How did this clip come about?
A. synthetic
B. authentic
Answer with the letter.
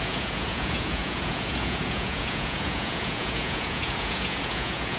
A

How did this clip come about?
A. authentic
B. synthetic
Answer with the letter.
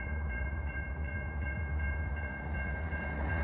B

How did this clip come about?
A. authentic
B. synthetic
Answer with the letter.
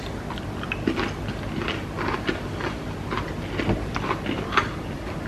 A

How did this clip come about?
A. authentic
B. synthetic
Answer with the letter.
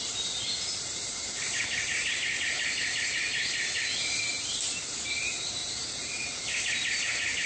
A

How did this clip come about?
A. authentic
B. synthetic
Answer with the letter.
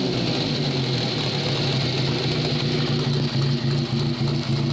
A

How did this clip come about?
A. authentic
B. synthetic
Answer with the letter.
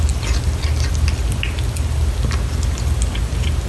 A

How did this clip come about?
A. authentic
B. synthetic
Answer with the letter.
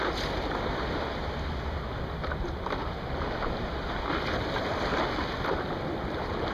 A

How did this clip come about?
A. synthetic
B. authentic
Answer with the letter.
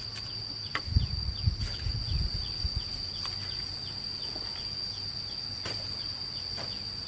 B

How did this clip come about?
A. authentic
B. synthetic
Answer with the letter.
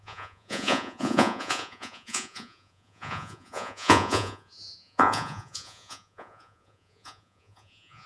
B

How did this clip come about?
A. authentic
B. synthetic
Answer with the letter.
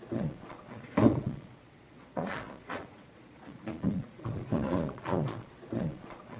B